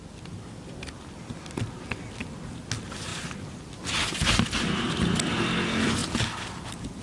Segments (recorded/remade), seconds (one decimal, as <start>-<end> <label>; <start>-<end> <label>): 0.0-7.0 recorded